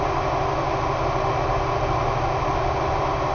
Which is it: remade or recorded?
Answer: recorded